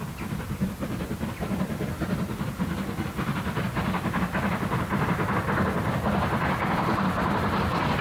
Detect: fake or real real